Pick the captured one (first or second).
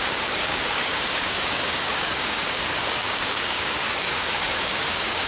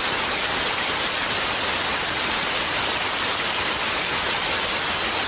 second